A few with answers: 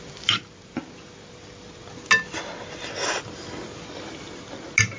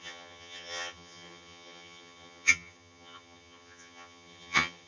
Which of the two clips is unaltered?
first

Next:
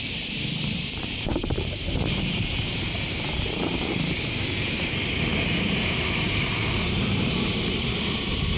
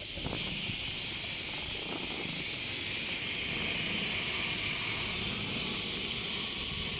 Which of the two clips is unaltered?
second